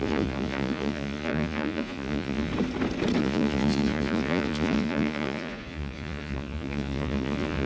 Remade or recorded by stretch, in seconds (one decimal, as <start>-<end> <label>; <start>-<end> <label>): 0.0-2.5 remade; 2.5-3.2 recorded; 3.2-7.7 remade